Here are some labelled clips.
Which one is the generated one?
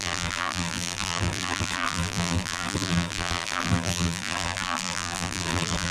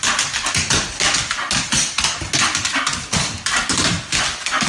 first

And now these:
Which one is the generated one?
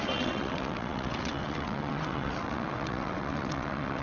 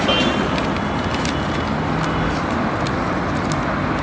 first